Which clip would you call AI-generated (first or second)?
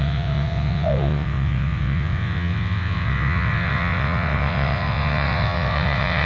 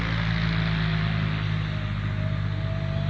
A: first